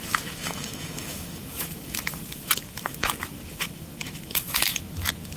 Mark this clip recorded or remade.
remade